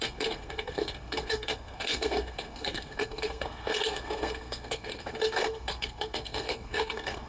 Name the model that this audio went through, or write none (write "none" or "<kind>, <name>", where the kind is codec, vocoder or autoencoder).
codec, SNAC